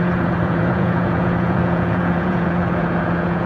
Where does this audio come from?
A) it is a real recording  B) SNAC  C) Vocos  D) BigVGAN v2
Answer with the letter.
C